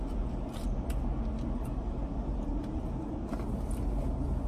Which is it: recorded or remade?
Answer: recorded